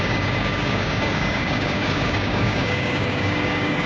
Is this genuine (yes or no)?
no